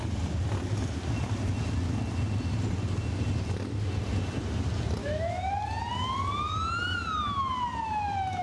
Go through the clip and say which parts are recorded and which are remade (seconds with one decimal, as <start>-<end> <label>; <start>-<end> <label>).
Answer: 0.0-5.0 recorded; 5.0-5.5 remade; 5.5-8.4 recorded